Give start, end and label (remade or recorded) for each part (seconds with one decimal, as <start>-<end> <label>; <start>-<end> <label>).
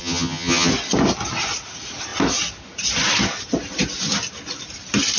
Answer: 0.0-0.7 remade; 0.7-5.2 recorded